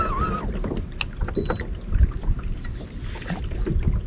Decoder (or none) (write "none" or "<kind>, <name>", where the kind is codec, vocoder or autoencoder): none